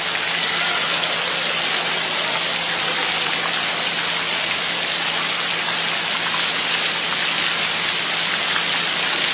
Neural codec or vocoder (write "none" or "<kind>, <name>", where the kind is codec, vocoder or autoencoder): none